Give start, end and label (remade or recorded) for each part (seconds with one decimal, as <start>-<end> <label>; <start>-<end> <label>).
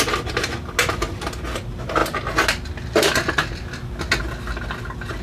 0.0-5.2 recorded